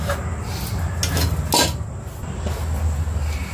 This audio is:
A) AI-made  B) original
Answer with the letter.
B